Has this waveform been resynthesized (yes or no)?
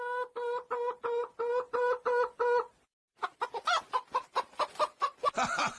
no